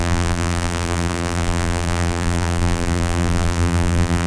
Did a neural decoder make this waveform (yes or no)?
yes